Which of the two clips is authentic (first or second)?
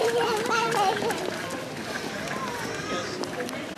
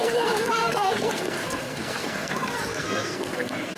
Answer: first